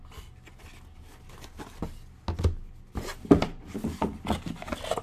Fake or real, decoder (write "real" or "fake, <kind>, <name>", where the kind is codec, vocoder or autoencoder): real